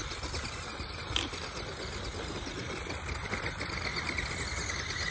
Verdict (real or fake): real